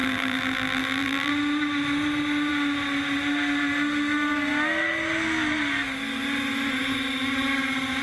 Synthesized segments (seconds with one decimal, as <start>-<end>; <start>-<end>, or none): 0.0-1.3